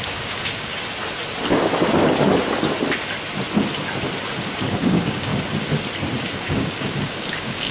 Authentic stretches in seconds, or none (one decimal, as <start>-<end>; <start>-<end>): 0.7-4.8; 5.3-6.3